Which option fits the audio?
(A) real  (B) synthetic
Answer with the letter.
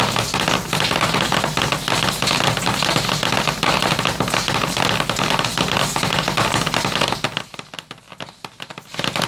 A